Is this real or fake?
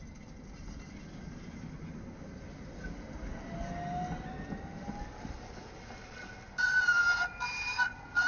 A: real